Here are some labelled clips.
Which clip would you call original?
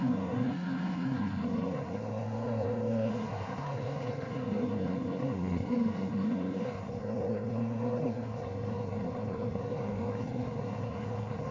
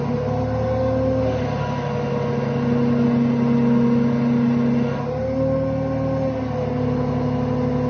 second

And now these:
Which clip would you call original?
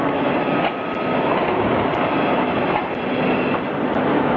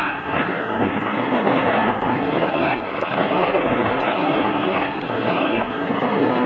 first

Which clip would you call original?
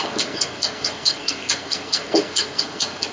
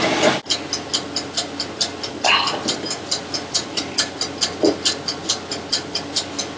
second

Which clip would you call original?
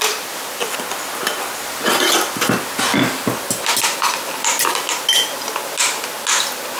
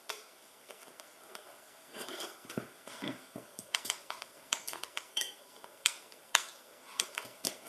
first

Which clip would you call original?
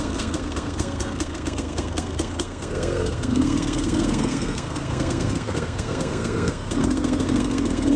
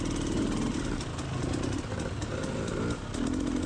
second